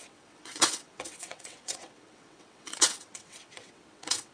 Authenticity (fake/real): fake